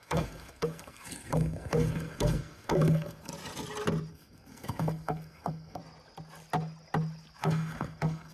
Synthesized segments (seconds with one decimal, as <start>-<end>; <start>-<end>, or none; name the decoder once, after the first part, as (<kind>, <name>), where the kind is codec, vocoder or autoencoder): 0.0-3.3 (codec, SNAC); 4.1-5.8; 7.4-8.3